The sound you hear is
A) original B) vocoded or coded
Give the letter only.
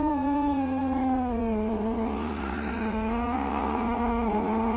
B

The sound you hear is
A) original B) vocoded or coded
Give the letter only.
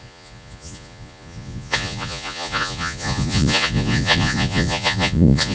B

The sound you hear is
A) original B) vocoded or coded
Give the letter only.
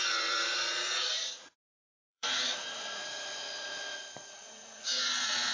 B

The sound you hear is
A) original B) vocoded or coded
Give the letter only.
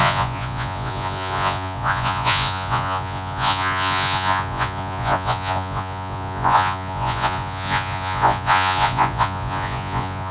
B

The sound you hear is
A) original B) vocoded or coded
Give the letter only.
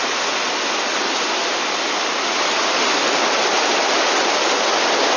A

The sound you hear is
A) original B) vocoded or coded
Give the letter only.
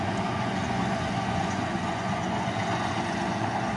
B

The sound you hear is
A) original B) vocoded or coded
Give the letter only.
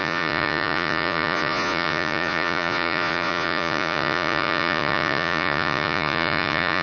B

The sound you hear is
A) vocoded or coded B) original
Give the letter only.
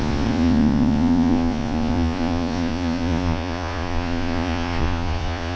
A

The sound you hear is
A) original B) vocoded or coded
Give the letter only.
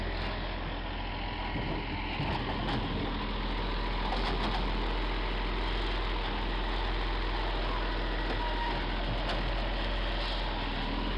A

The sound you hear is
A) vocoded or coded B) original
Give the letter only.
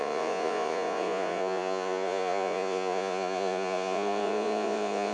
A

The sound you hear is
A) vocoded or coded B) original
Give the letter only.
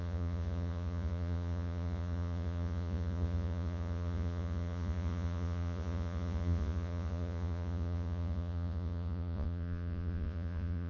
A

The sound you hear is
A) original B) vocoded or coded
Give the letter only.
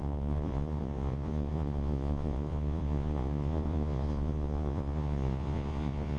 B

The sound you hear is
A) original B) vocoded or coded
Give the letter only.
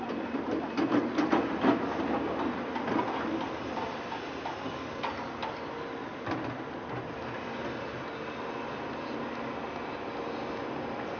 A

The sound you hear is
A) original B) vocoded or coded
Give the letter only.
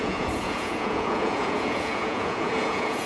B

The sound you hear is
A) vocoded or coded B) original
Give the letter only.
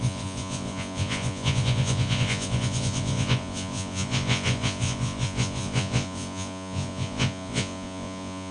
A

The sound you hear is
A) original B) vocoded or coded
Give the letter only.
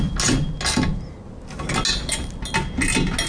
A